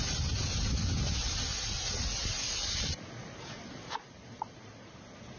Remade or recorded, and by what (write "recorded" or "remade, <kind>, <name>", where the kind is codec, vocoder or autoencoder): recorded